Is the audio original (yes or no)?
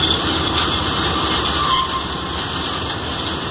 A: yes